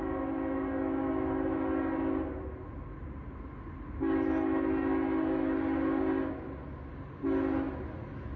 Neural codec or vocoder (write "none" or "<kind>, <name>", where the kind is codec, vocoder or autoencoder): none